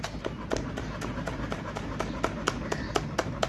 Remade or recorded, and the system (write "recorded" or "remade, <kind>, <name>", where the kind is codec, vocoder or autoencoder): recorded